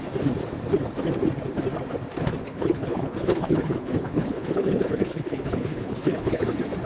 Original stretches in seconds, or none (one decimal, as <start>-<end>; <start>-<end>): 0.0-2.4; 6.4-6.9